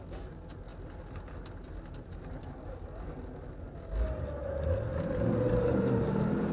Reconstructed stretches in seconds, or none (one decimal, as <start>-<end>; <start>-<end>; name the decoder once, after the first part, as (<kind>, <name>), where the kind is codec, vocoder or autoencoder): none